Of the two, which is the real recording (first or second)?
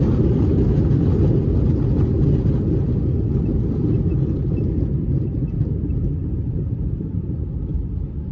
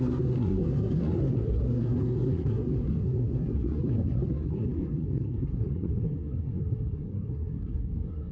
first